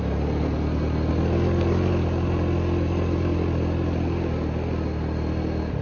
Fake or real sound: real